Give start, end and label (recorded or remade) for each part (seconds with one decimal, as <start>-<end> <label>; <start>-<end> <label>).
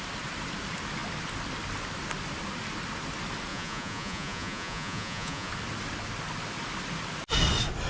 0.0-3.5 recorded; 3.5-5.5 remade; 5.5-7.9 recorded